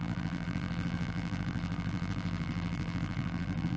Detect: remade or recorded remade